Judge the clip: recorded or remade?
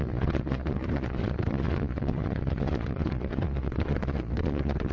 remade